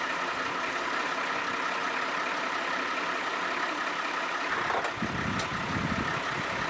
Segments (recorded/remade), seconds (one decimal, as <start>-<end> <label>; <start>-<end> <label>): 0.0-6.7 recorded